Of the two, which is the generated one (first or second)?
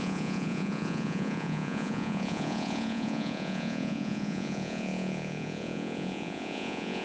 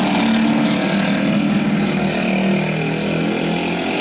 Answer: first